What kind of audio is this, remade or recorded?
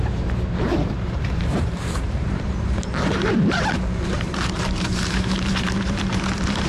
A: remade